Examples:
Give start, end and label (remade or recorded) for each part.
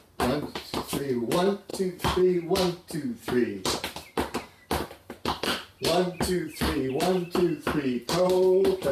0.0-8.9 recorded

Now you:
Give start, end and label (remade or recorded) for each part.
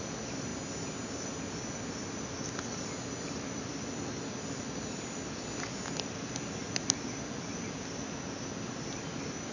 0.0-9.5 recorded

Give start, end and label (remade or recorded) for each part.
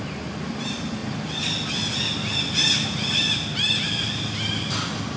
0.0-5.2 recorded